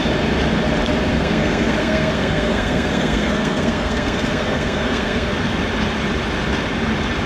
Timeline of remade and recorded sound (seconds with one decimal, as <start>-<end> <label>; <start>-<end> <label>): 0.0-1.1 recorded; 1.1-5.3 remade; 5.3-7.3 recorded